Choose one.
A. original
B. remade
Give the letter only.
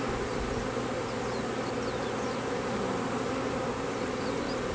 A